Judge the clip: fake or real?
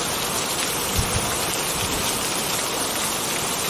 fake